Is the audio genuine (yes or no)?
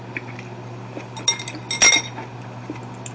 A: yes